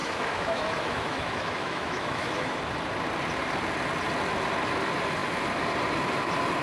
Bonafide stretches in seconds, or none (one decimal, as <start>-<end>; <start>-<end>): 2.6-6.6